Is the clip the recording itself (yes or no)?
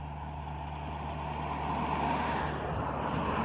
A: yes